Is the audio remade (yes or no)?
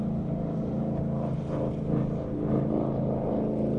no